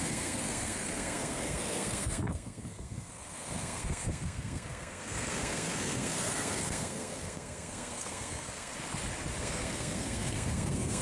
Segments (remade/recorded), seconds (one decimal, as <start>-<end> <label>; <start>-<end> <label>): 0.0-8.7 remade; 8.7-9.4 recorded; 9.4-11.0 remade